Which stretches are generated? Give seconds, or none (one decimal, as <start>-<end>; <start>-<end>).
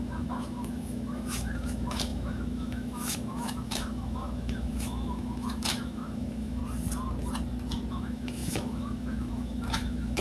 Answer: 0.0-6.6; 7.9-10.2